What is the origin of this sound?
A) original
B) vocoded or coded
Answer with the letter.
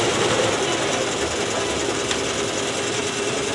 A